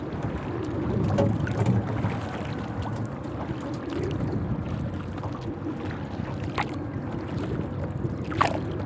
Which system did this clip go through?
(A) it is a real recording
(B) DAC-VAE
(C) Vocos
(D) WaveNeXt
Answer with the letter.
A